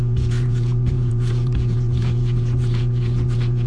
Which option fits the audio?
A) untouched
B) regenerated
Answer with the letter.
B